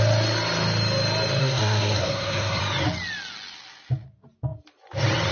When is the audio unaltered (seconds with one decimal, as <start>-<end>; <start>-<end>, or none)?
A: 0.0-1.4; 2.6-5.3